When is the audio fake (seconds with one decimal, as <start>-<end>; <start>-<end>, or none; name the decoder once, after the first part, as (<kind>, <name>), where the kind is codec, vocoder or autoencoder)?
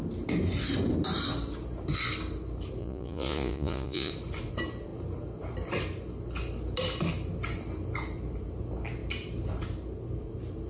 2.8-4.1 (vocoder, Vocos)